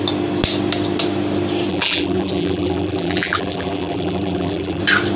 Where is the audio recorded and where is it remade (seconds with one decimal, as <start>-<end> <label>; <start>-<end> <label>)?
0.0-1.7 recorded; 1.7-4.8 remade; 4.8-5.2 recorded